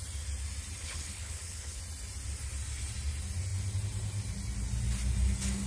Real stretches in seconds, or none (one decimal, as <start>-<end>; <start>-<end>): 0.0-0.8; 1.8-5.7